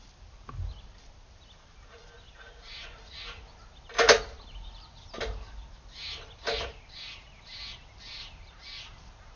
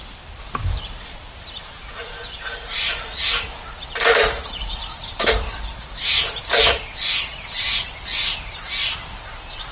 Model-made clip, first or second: second